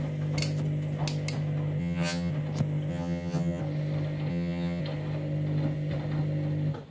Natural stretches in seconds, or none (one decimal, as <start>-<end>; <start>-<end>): 0.0-1.8; 2.3-2.9; 3.6-4.3; 4.8-6.9